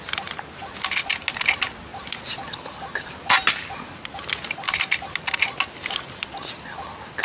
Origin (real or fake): real